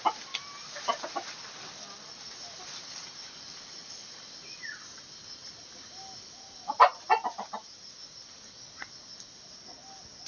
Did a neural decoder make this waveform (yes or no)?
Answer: no